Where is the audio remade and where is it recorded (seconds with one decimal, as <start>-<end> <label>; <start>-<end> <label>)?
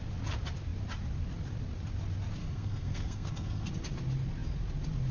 0.0-2.4 recorded; 2.4-3.7 remade; 3.7-5.1 recorded